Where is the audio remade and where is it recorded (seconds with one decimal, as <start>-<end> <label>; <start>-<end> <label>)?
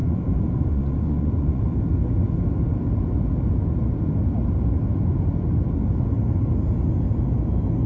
0.0-1.6 remade; 1.6-7.9 recorded